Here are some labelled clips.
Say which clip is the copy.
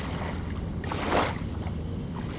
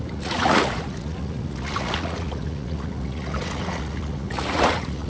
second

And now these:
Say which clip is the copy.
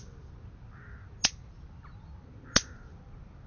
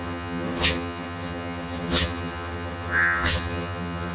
second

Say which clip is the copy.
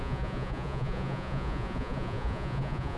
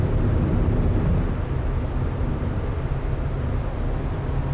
first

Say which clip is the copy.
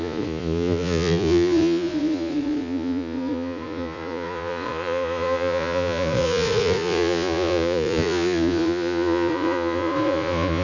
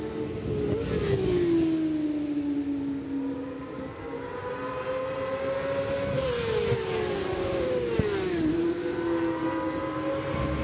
first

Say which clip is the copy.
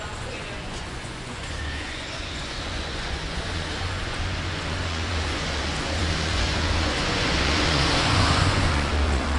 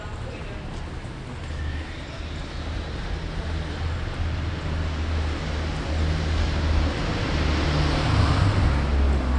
first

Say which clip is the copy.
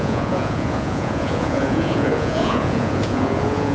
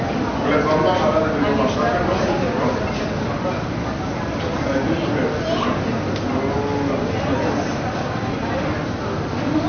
first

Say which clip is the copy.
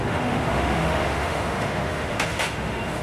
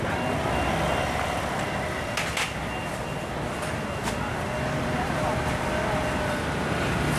first